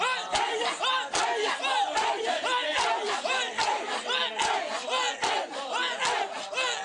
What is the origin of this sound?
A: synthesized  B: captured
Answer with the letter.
B